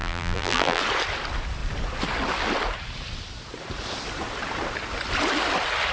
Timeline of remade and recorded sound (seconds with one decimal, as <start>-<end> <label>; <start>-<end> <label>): 0.0-0.8 remade; 0.8-5.9 recorded